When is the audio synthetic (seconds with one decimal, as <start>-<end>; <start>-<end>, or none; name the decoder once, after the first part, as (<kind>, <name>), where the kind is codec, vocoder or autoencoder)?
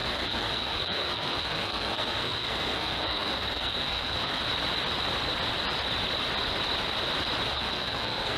0.0-4.4 (codec, SNAC); 7.5-8.4